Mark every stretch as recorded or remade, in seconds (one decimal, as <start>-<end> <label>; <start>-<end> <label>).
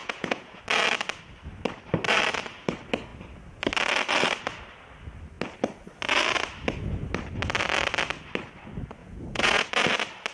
0.0-0.6 remade; 0.6-9.0 recorded; 9.0-9.7 remade; 9.7-10.3 recorded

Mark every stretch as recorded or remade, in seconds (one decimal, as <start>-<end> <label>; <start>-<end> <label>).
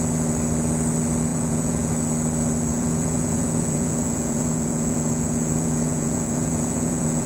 0.0-1.3 recorded; 1.3-1.9 remade; 1.9-2.7 recorded; 2.7-7.3 remade